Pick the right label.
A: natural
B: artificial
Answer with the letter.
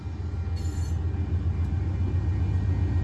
A